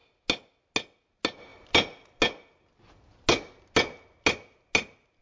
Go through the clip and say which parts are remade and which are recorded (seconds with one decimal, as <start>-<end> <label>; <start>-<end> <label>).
0.0-5.2 recorded